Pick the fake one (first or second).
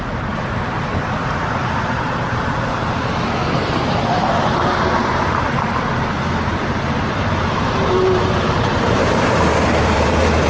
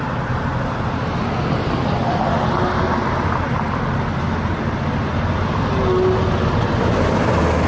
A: first